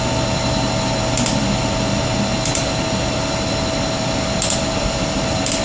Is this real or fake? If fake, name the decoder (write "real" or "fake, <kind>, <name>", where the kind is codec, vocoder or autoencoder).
fake, vocoder, BigVGAN v2